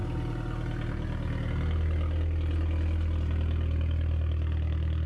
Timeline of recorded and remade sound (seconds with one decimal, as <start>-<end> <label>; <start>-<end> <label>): 0.0-5.1 recorded

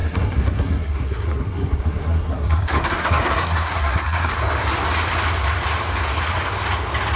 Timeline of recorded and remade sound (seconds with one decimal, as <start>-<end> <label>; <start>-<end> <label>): 0.0-4.3 remade; 4.3-7.2 recorded

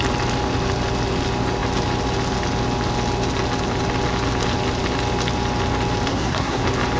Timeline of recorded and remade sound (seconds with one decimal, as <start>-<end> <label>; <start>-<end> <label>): 0.0-6.1 recorded; 6.1-6.6 remade; 6.6-7.0 recorded

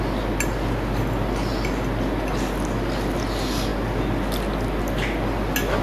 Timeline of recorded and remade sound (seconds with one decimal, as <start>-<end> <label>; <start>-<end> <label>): 0.0-5.8 recorded

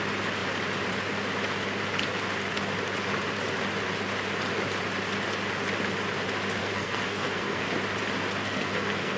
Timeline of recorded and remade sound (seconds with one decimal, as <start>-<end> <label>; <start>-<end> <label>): 0.0-6.6 recorded; 6.6-7.7 remade; 7.7-8.4 recorded; 8.4-9.2 remade

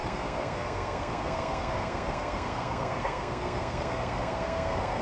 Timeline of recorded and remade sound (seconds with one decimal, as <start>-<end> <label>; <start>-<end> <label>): 0.0-5.0 remade

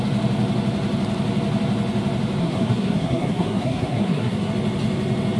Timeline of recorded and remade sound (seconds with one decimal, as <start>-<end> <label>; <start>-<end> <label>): 0.0-2.4 recorded; 2.4-4.5 remade; 4.5-5.4 recorded

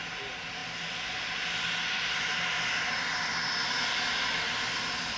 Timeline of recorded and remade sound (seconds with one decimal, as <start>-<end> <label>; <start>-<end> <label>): 0.0-5.2 recorded